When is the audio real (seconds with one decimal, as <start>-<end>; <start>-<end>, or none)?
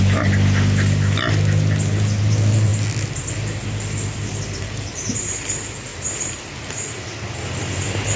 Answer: 0.0-8.2